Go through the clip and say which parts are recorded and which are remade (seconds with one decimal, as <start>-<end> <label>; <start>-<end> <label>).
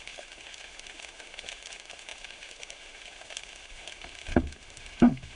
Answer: 0.0-5.3 remade